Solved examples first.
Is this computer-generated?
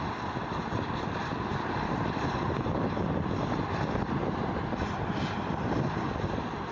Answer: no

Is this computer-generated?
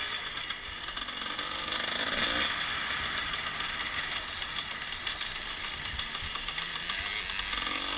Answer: no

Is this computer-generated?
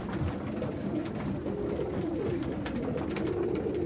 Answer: no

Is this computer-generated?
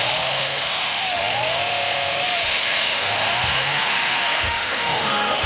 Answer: yes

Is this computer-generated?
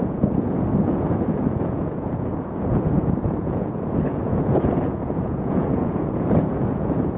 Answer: yes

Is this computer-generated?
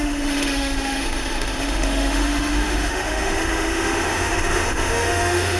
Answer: yes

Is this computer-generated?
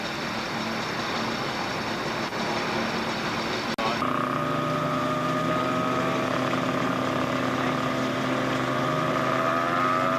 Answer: no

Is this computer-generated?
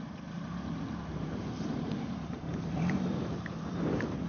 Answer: yes